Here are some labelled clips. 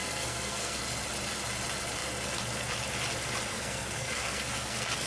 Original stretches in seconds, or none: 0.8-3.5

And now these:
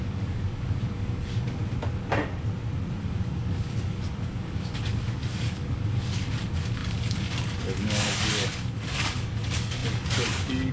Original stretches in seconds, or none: 1.6-3.0

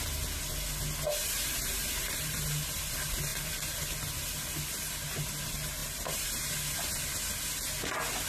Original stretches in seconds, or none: 0.0-1.2; 2.4-5.8; 6.5-8.3

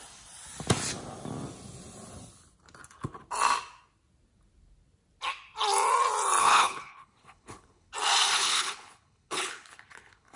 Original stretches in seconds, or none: 0.0-6.4; 7.9-8.3

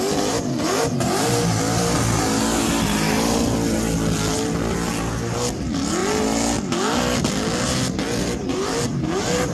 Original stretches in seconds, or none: 0.0-9.5